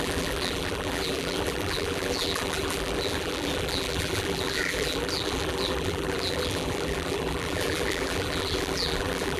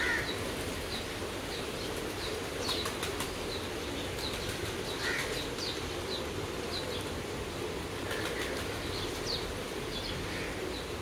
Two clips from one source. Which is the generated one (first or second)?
first